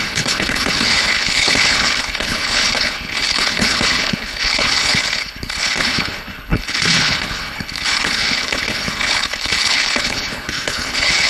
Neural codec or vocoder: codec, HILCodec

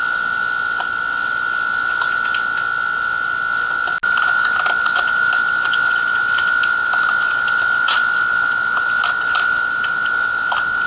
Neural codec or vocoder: none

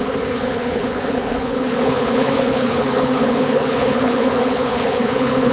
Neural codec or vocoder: codec, HILCodec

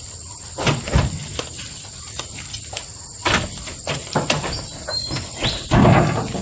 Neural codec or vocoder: none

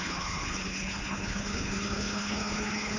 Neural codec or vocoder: codec, HILCodec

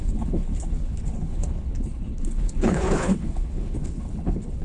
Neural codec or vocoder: codec, HILCodec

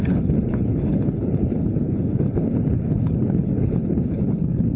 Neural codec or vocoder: codec, HILCodec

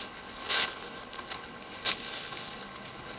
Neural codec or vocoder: codec, HILCodec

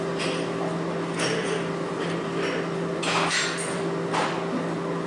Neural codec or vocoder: none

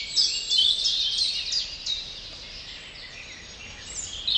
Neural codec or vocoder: none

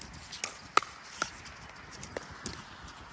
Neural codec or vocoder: none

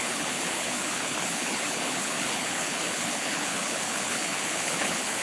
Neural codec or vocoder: codec, HILCodec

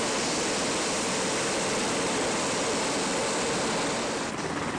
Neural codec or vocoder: none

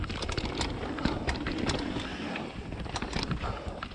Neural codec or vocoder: none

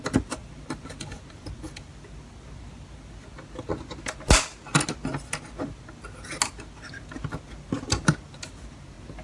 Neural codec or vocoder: none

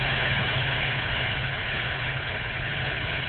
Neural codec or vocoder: codec, HILCodec